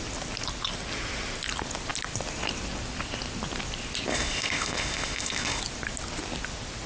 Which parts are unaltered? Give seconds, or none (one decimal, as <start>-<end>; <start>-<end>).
0.0-4.1; 5.6-6.9